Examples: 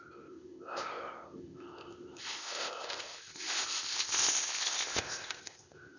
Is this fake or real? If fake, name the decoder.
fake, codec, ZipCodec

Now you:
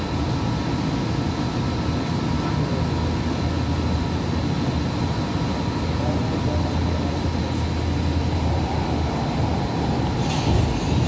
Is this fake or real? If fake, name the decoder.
real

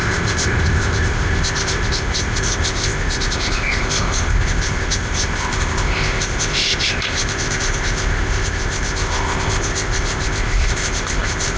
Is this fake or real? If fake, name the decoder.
fake, codec, ZipCodec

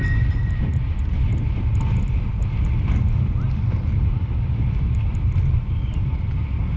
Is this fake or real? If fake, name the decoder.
real